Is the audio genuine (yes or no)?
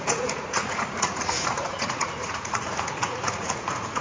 no